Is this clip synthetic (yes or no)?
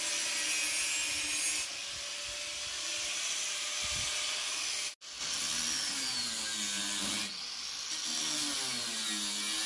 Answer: no